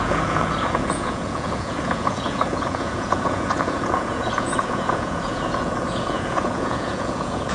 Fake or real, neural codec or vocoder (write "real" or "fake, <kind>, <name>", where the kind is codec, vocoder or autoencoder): fake, vocoder, Vocos